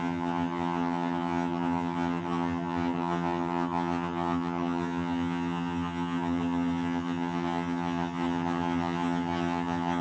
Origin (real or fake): fake